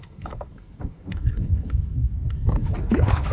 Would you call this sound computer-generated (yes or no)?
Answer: yes